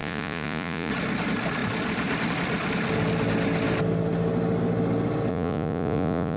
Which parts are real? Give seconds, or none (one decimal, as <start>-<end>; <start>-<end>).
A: 0.9-5.3